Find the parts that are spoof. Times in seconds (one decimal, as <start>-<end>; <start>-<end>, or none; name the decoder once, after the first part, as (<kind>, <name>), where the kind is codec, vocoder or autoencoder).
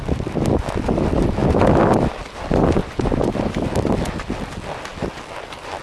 2.8-3.5 (vocoder, BigVGAN v2)